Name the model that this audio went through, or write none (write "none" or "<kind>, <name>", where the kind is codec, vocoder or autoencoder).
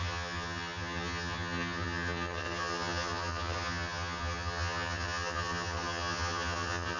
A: vocoder, HiFi-GAN